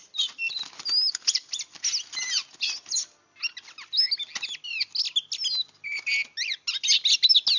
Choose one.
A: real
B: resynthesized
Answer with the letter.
A